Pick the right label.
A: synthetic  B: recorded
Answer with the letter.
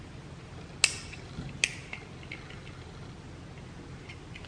B